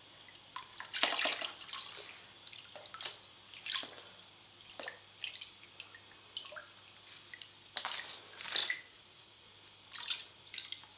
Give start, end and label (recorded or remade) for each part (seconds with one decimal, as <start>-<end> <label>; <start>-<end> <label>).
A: 0.0-8.6 recorded; 8.6-9.4 remade; 9.4-11.0 recorded